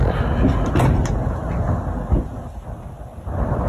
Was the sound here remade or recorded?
recorded